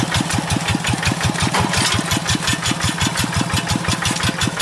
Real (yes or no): yes